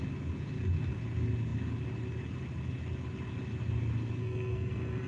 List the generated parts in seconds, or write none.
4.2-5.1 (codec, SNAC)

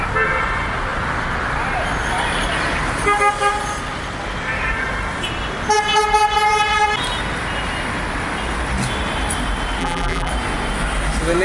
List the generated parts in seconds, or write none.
9.8-10.3 (vocoder, BigVGAN v2)

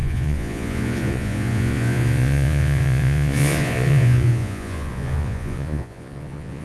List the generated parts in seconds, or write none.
0.0-6.6 (vocoder, Vocos)

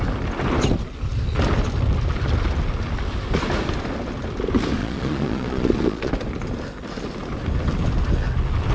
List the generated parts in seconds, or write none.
4.8-6.1 (vocoder, Vocos)

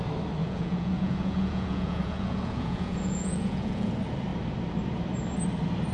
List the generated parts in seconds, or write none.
0.4-3.9 (vocoder, Vocos)

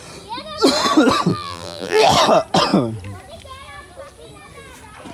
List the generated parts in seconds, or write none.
1.3-2.0 (vocoder, BigVGAN v2)